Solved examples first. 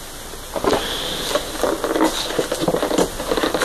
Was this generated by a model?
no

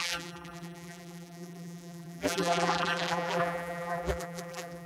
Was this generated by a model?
yes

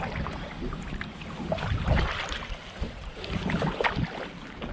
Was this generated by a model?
yes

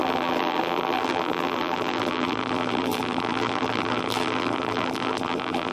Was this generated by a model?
yes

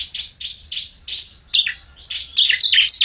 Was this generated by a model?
no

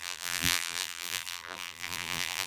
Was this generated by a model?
yes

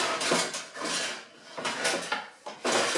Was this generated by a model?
no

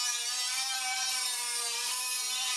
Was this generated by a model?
yes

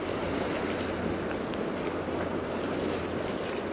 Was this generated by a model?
no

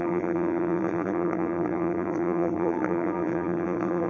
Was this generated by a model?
yes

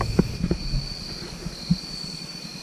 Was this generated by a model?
no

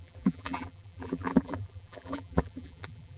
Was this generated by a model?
yes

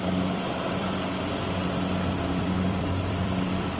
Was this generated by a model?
yes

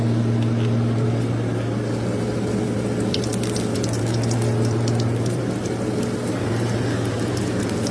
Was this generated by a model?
no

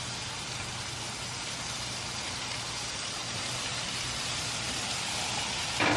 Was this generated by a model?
no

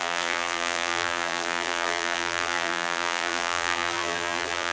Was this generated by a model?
yes